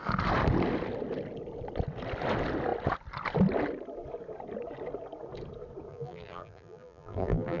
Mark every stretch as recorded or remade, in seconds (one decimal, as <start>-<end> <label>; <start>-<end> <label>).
0.0-5.9 recorded; 5.9-7.6 remade